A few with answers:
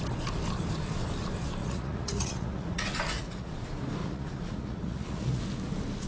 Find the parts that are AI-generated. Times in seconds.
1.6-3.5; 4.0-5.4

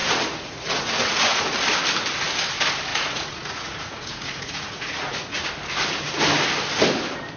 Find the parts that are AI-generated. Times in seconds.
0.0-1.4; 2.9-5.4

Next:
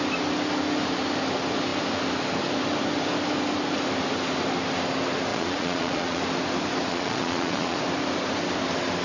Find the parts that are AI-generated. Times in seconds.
5.3-6.2; 6.9-7.8